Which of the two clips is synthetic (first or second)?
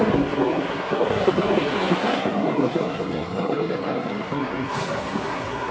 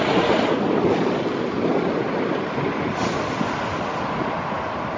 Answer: first